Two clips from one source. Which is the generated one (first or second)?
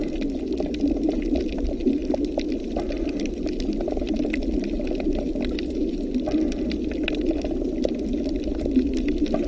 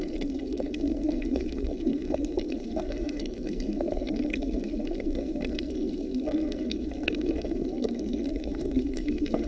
second